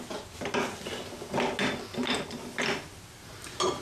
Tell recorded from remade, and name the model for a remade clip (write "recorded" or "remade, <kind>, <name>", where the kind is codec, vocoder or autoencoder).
recorded